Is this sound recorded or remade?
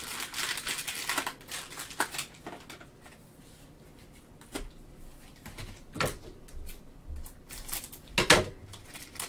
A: recorded